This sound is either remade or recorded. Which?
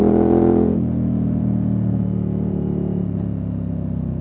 remade